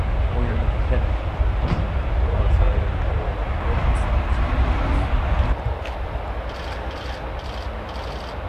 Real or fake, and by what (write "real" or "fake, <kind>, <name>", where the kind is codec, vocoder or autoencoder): real